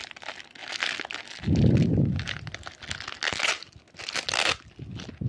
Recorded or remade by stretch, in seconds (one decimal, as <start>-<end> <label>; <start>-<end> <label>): 0.0-5.3 recorded